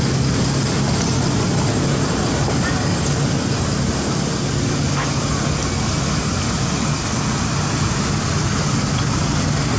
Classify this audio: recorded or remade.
recorded